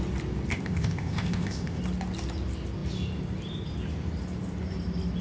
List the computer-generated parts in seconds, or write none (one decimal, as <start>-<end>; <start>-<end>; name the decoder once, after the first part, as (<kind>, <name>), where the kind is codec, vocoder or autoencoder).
0.5-1.8 (codec, ZipCodec)